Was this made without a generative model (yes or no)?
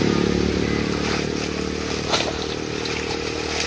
yes